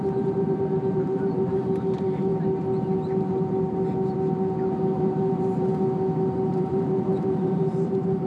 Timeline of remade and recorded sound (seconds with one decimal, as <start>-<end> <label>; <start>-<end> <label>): 0.0-2.3 remade; 2.3-5.0 recorded; 5.0-5.7 remade; 5.7-6.5 recorded; 6.5-8.3 remade